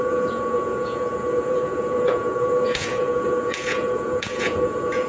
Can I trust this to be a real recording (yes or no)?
no